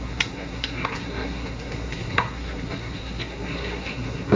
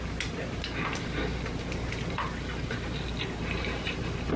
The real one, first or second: second